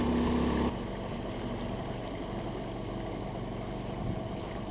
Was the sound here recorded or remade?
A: recorded